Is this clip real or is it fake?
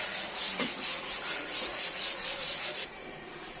fake